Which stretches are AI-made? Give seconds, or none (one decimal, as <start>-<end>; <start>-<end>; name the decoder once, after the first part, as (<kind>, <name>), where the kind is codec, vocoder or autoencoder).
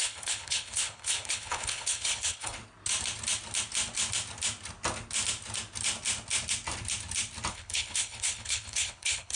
0.0-2.6 (codec, HILCodec); 7.5-9.4